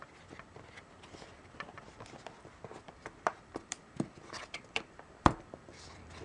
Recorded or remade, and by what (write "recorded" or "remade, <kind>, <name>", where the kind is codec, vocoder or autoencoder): remade, vocoder, BigVGAN v2